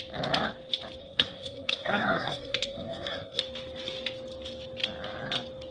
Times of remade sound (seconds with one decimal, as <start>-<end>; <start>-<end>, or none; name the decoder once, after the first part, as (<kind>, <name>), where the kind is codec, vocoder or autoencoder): 1.0-3.4 (codec, SNAC)